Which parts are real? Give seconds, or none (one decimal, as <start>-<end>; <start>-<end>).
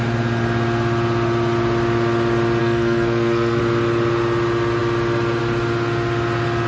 0.0-2.6; 3.6-6.7